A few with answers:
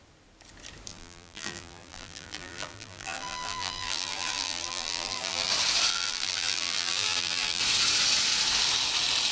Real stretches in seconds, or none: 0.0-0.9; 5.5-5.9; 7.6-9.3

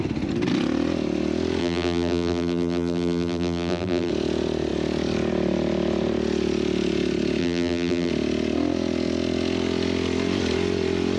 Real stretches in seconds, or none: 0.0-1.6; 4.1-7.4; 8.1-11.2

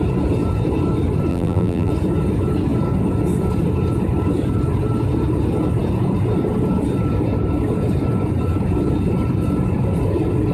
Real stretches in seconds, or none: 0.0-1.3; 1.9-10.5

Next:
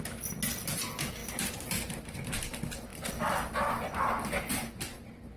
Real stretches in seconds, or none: 0.0-1.2; 2.3-4.9

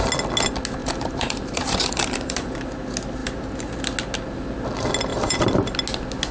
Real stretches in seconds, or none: 0.0-0.8; 2.5-3.2; 3.8-5.1; 5.7-6.3